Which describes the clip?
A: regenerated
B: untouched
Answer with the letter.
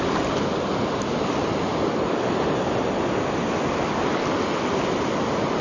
B